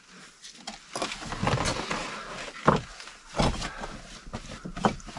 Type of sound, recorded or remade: recorded